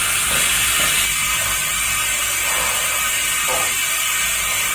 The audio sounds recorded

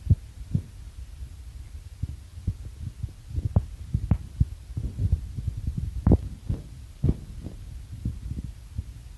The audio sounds recorded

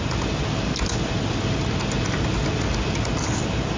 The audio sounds recorded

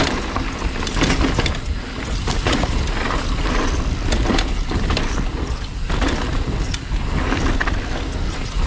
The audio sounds recorded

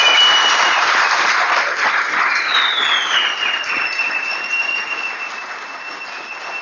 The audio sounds recorded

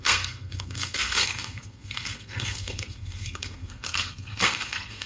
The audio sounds remade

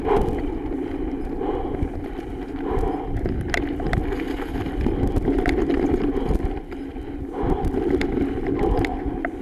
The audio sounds recorded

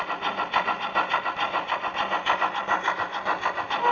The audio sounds recorded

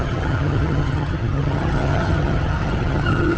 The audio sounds remade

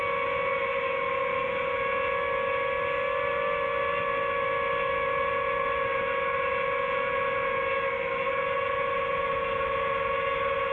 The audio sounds recorded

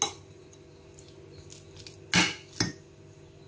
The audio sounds recorded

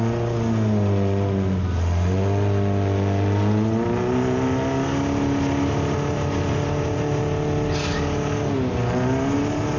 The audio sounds recorded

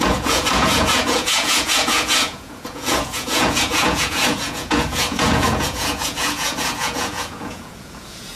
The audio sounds remade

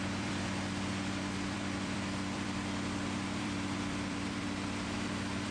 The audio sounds remade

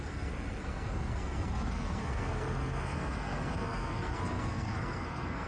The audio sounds remade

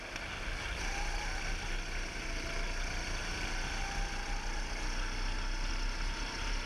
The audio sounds recorded